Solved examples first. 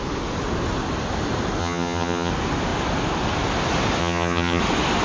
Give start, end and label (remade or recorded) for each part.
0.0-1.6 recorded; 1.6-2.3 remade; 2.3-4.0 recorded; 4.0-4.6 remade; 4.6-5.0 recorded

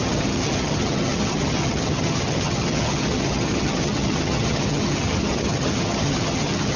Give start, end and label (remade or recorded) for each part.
0.0-6.8 remade

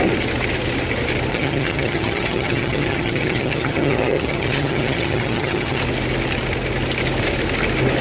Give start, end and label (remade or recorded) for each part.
0.0-1.3 recorded; 1.3-5.8 remade; 5.8-8.0 recorded

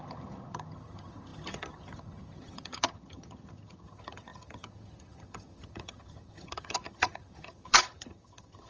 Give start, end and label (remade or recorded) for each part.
0.0-8.7 remade

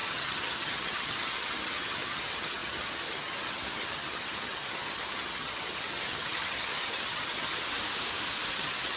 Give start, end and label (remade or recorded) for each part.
0.0-7.7 remade; 7.7-8.5 recorded; 8.5-9.0 remade

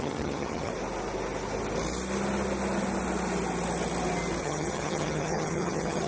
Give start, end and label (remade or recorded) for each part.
0.0-0.7 remade; 0.7-4.4 recorded; 4.4-6.1 remade

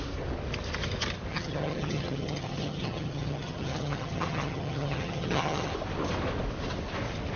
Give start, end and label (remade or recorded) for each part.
0.0-1.3 recorded; 1.3-5.7 remade; 5.7-7.4 recorded